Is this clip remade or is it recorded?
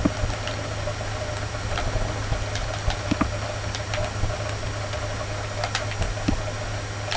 recorded